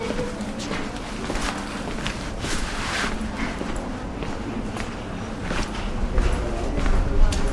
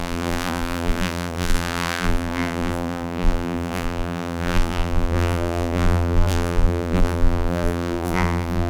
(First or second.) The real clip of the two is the first